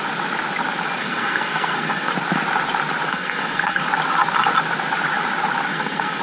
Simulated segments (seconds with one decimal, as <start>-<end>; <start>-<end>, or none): 1.0-2.1; 3.1-3.8; 5.7-6.2